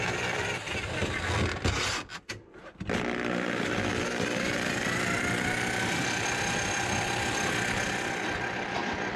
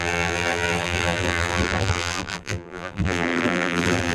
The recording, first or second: first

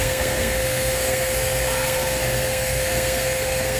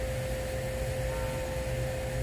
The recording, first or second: second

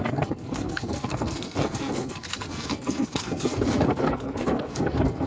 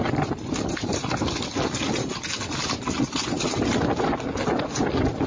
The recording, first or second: second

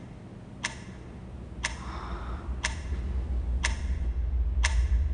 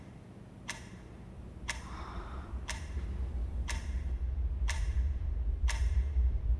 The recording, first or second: first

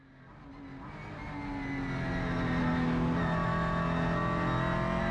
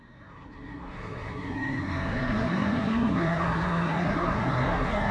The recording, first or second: first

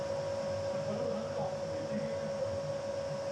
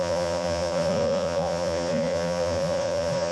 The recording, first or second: first